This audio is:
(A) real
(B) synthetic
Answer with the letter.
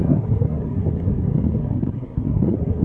B